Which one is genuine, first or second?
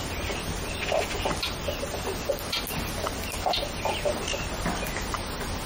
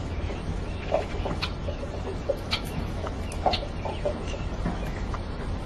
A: first